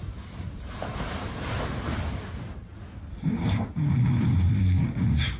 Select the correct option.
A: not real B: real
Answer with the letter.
A